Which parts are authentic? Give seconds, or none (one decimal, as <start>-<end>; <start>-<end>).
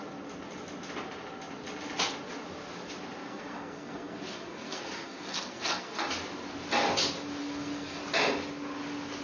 0.0-3.2; 6.0-7.4; 8.0-9.2